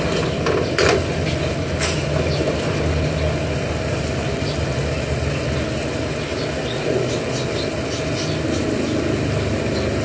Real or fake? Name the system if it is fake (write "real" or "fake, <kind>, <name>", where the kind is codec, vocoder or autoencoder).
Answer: real